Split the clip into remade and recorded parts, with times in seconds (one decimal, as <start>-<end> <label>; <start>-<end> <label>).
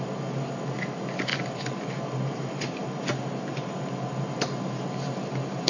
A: 0.0-5.7 recorded